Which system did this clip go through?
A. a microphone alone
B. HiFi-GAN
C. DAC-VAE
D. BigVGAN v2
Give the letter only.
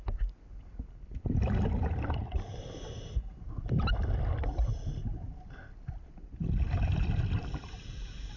D